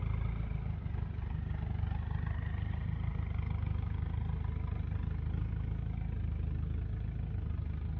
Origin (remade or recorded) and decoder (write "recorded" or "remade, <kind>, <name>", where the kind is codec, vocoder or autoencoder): recorded